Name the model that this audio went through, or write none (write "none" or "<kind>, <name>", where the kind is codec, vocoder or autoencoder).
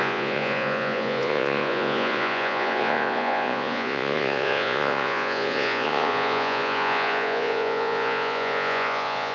vocoder, Vocos